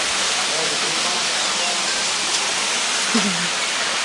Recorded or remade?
recorded